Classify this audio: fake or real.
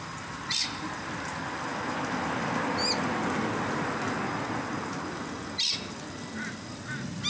real